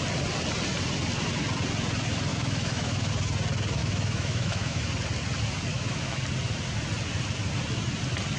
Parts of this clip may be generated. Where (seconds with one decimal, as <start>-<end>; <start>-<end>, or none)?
2.3-3.1; 3.8-4.8; 5.7-6.2

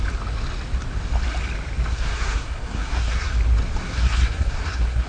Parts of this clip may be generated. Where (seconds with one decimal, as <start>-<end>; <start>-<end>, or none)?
1.9-3.3; 3.8-5.1

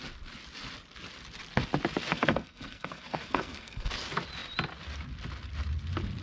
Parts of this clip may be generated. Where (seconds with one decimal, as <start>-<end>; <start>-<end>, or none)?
2.1-3.9

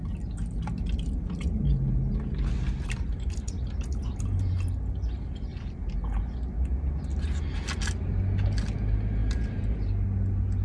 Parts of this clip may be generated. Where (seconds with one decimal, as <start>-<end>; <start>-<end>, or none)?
0.0-4.7; 9.2-9.9